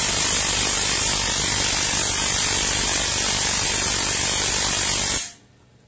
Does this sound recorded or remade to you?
recorded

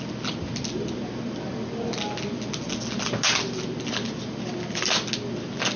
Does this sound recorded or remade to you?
recorded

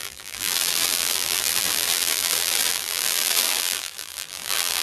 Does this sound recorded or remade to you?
remade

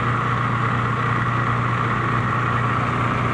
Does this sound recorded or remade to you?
recorded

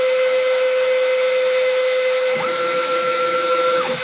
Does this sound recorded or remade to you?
remade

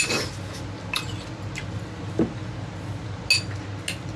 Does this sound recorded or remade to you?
recorded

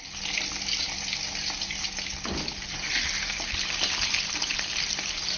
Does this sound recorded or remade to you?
recorded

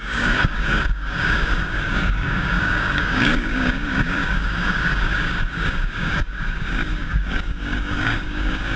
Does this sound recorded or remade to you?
remade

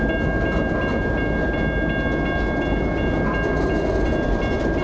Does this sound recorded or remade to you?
recorded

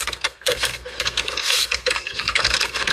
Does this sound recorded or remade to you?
remade